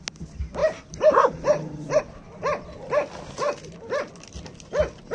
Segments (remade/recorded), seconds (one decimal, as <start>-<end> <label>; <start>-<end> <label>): 0.0-0.6 recorded; 0.6-2.0 remade; 2.0-5.1 recorded